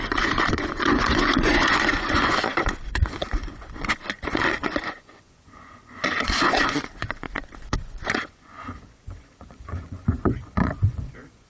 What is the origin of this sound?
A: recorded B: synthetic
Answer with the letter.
B